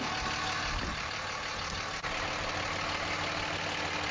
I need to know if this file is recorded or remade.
recorded